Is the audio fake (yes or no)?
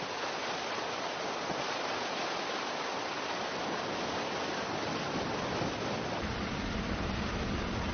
no